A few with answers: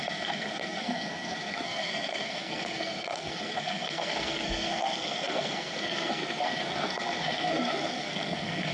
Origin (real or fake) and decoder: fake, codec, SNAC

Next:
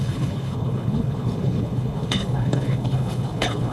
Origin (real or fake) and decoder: fake, codec, HILCodec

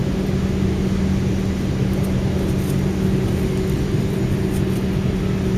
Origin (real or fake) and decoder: real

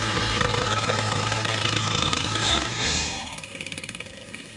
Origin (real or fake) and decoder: fake, codec, SNAC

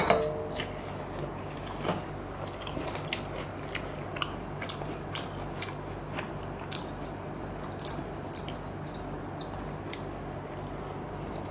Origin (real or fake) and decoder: real